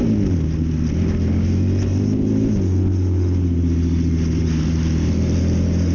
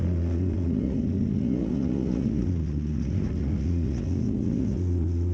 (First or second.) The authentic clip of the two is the first